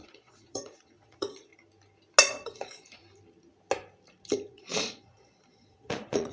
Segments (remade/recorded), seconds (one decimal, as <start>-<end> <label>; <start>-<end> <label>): 0.0-1.5 remade; 1.5-2.2 recorded; 2.2-3.0 remade; 3.0-4.5 recorded; 4.5-6.3 remade